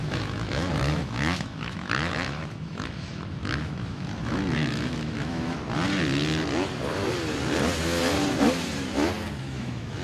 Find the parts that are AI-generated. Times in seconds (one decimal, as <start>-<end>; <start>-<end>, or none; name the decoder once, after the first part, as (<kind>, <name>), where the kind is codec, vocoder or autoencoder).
0.0-5.6 (autoencoder, DAC-VAE); 9.4-10.0